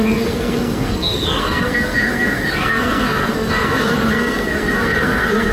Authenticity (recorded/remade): remade